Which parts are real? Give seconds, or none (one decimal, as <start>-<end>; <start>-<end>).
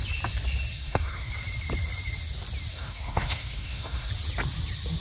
0.0-0.7; 1.3-2.7; 4.1-5.0